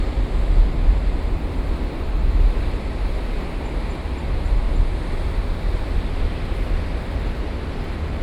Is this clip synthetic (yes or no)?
no